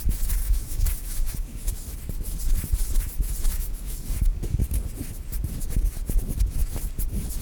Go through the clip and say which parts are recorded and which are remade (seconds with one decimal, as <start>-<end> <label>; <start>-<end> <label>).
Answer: 0.0-0.4 recorded; 0.4-1.7 remade; 1.7-3.5 recorded; 3.5-4.6 remade; 4.6-7.4 recorded